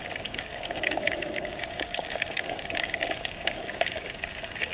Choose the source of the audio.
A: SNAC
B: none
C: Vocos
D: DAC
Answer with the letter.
D